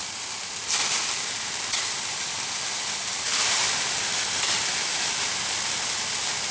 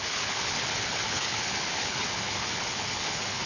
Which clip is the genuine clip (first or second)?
first